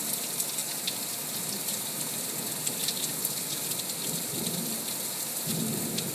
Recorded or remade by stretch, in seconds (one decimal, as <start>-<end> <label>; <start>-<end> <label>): 0.0-2.8 recorded; 2.8-4.4 remade; 4.4-5.5 recorded; 5.5-6.1 remade